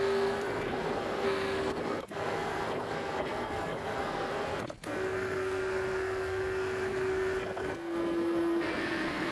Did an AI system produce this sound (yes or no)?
yes